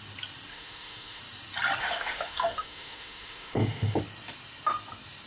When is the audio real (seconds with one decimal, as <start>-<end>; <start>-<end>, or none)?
0.0-0.5; 1.2-1.8; 4.0-5.3